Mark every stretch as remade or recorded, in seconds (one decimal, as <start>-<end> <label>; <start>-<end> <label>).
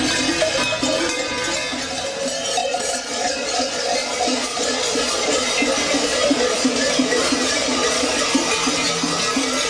0.0-2.6 recorded; 2.6-5.5 remade; 5.5-6.1 recorded; 6.1-8.2 remade; 8.2-9.7 recorded